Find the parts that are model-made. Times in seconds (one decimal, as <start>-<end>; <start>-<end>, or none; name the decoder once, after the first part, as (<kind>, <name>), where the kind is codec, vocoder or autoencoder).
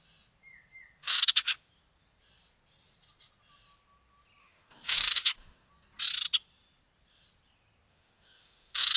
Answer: 1.0-1.7 (autoencoder, DAC-VAE); 4.4-5.7; 7.9-9.0